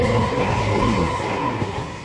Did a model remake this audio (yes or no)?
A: yes